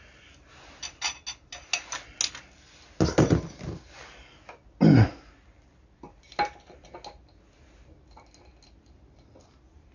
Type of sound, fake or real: real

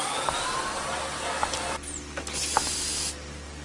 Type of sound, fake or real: real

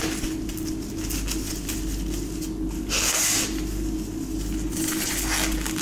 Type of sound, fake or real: real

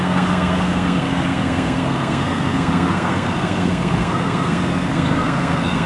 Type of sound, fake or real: fake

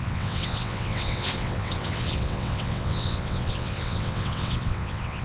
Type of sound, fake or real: fake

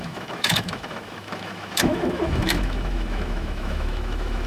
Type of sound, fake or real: fake